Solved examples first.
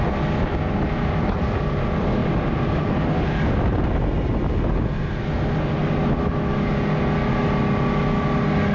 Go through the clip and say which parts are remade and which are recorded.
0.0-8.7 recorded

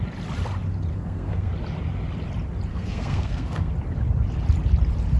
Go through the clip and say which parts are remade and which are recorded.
0.0-0.9 recorded; 0.9-1.5 remade; 1.5-2.7 recorded; 2.7-3.7 remade; 3.7-5.2 recorded